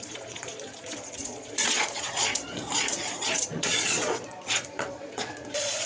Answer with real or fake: fake